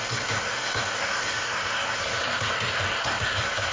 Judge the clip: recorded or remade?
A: remade